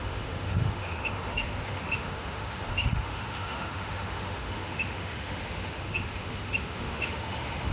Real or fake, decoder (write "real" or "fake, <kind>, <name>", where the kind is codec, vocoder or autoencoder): fake, autoencoder, DAC-VAE